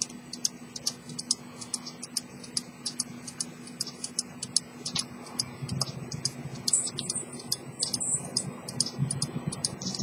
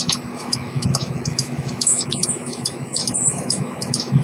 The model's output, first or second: second